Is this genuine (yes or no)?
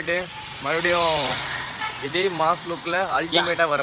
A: no